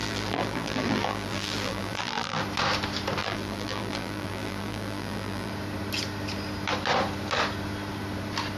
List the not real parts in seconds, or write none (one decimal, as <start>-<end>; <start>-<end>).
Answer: 0.0-2.4; 3.2-5.5